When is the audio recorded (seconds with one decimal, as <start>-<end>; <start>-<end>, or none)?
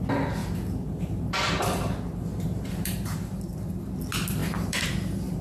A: 0.0-0.4; 1.9-2.3; 3.5-4.4; 4.9-5.4